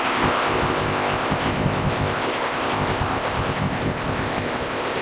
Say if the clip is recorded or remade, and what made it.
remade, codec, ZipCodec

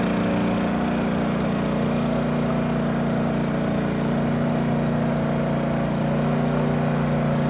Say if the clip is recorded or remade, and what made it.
recorded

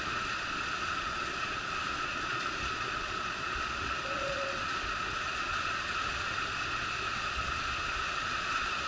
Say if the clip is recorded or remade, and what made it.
remade, vocoder, Vocos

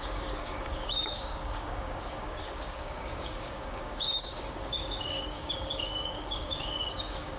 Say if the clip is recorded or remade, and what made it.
remade, codec, DAC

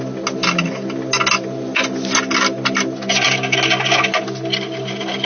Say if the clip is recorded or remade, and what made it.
recorded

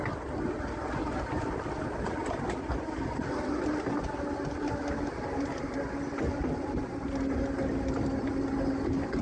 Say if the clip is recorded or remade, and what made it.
recorded